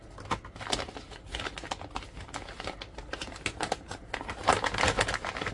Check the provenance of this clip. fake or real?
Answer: real